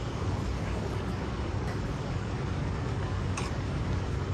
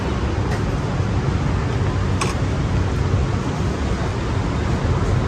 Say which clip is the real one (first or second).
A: second